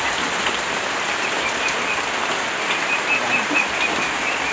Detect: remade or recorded recorded